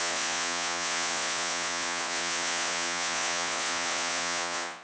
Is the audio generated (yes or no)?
yes